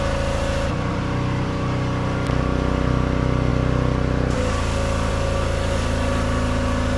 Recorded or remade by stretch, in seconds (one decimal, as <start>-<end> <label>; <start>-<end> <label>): 0.0-7.0 recorded